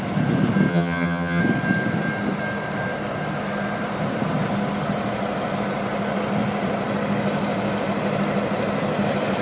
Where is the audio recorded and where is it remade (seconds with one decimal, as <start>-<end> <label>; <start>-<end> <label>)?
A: 0.0-0.7 recorded; 0.7-1.4 remade; 1.4-9.4 recorded